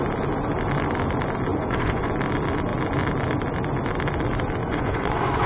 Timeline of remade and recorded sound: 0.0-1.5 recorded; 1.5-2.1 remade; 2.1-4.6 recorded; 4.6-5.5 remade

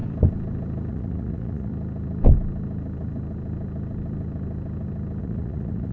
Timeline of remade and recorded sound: 0.0-0.9 recorded; 0.9-1.7 remade; 1.7-5.2 recorded; 5.2-5.9 remade

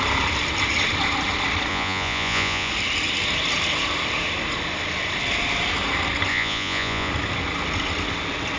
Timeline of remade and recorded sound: 0.0-1.7 recorded; 1.7-2.7 remade; 2.7-6.3 recorded; 6.3-7.1 remade; 7.1-8.6 recorded

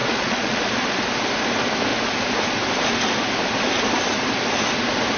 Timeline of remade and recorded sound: 0.0-1.0 remade; 1.0-5.2 recorded

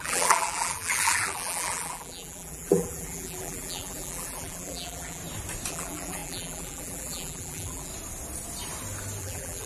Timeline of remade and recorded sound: 0.0-5.2 remade; 5.2-5.7 recorded; 5.7-7.9 remade; 7.9-9.2 recorded; 9.2-9.7 remade